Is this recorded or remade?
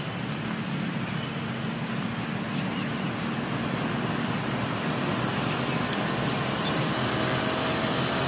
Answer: recorded